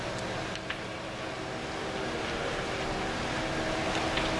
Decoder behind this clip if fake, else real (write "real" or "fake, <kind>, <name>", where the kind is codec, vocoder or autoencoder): real